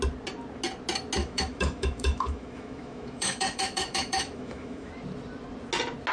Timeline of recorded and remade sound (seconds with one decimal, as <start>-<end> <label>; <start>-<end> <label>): 0.0-1.2 recorded; 1.2-4.9 remade; 4.9-6.1 recorded